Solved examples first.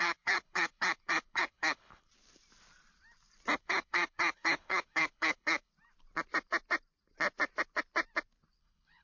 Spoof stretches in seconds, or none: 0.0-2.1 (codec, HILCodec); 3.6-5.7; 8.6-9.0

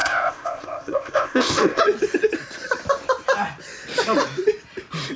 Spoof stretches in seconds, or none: 0.0-1.8 (codec, ZipCodec)

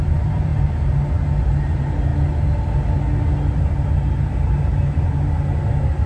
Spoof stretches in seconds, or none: 0.0-0.5 (vocoder, BigVGAN v2); 1.4-2.1

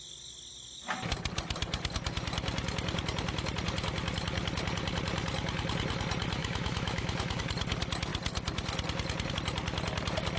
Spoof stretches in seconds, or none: 6.4-7.4 (autoencoder, DAC-VAE)

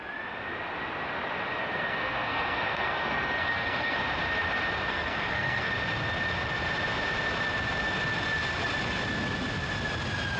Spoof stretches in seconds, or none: 1.6-4.0 (codec, SNAC); 4.9-5.7

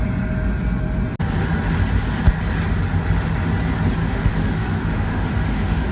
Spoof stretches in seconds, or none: 4.0-5.9 (autoencoder, DAC-VAE)

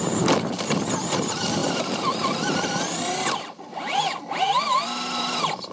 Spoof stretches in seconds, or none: none

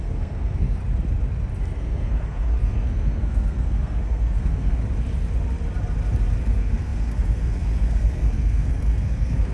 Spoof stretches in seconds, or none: 0.0-0.8 (codec, SNAC); 1.8-4.8; 6.4-9.5